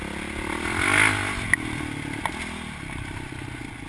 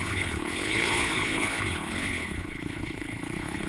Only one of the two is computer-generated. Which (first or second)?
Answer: second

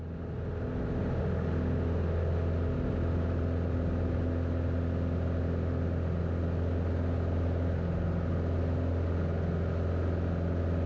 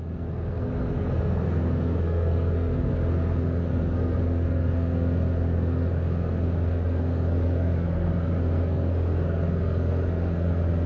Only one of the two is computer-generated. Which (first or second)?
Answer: second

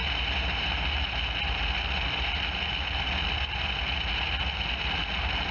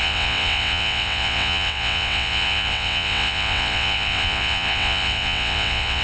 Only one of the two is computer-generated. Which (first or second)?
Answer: second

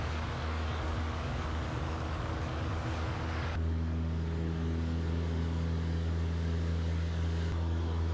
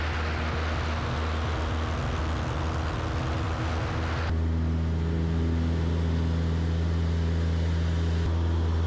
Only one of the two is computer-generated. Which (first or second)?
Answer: first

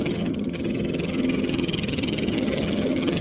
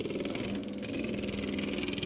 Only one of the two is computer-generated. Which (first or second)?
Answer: first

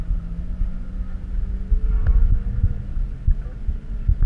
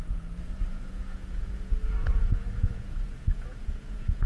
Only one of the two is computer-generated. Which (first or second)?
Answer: second